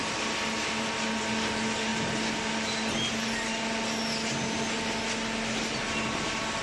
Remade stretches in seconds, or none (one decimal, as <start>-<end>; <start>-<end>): none